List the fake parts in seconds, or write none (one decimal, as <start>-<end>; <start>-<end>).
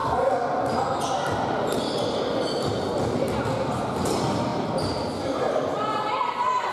4.5-6.7